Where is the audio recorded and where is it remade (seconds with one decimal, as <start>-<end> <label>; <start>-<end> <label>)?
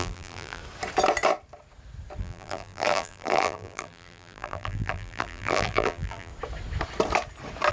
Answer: 0.0-0.6 remade; 0.6-2.2 recorded; 2.2-6.3 remade; 6.3-7.7 recorded